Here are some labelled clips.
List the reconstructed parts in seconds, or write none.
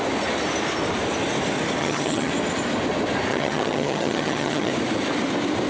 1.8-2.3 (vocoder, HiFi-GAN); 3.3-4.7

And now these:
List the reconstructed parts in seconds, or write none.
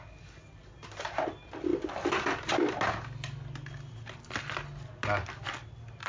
none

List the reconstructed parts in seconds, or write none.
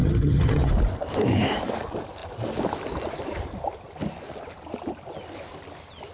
0.0-0.7 (vocoder, HiFi-GAN)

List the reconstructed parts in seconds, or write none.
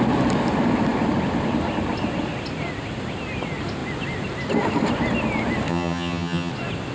5.7-6.5 (vocoder, HiFi-GAN)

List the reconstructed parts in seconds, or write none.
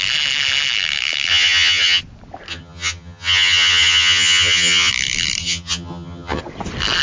1.3-2.0 (vocoder, HiFi-GAN); 2.5-4.9; 5.4-6.4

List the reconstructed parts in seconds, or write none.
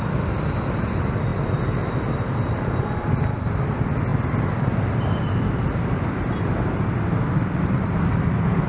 none